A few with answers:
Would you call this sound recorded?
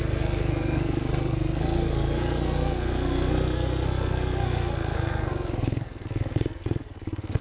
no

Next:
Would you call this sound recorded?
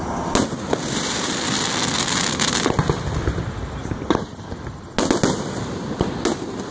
yes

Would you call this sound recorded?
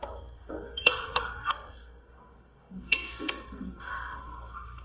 no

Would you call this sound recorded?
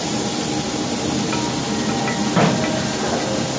yes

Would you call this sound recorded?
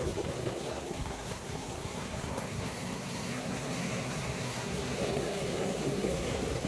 no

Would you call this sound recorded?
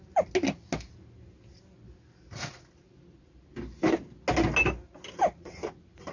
yes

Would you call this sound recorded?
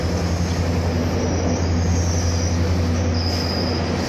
yes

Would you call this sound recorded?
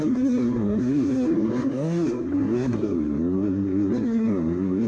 no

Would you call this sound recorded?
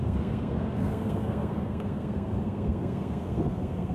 no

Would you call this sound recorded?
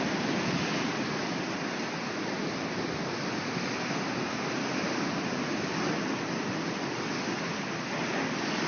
yes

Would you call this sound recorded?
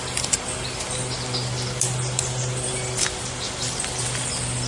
yes